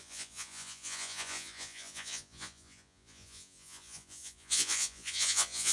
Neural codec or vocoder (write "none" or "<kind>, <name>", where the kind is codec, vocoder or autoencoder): vocoder, Vocos